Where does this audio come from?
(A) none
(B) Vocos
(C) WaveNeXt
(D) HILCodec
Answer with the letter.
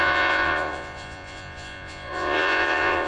B